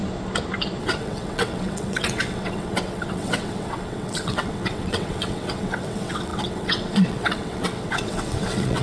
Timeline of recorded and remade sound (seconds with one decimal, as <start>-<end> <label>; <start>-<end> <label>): 0.0-0.8 recorded; 0.8-8.8 remade